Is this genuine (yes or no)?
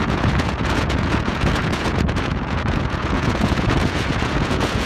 no